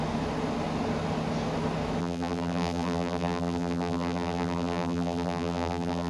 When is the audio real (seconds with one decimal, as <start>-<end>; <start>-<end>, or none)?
0.0-2.0

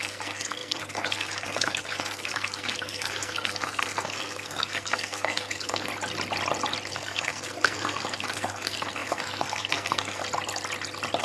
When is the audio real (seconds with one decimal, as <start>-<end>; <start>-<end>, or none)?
5.9-6.9; 10.2-11.2

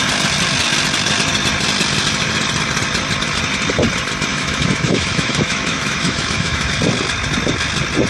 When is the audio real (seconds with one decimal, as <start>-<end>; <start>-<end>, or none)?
0.0-4.3; 6.7-8.1

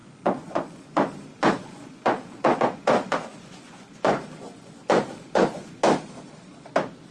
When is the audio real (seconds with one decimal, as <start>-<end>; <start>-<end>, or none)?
5.8-7.1

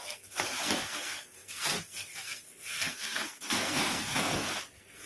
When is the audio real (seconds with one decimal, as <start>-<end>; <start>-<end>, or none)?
none

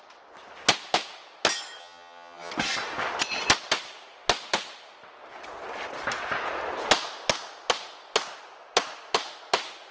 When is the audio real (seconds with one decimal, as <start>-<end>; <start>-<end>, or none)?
0.0-1.8; 2.5-9.9